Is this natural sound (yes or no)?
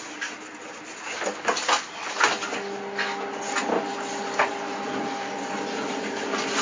yes